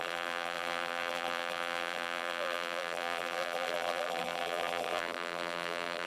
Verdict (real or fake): fake